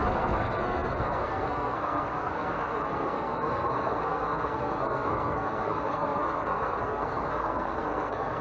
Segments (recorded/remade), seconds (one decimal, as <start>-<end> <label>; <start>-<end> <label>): 0.0-8.4 remade